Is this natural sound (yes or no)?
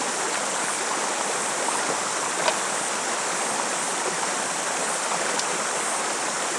yes